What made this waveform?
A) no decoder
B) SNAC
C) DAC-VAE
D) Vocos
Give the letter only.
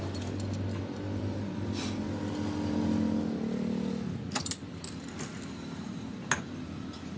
A